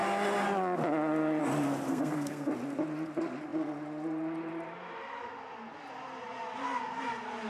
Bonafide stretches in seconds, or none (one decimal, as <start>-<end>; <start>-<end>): 0.0-1.9; 2.5-7.5